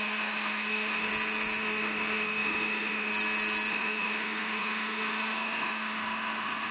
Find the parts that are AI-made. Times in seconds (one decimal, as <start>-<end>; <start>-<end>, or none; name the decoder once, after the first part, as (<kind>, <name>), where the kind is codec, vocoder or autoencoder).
0.0-1.1 (autoencoder, DAC-VAE); 1.6-3.1; 3.7-6.7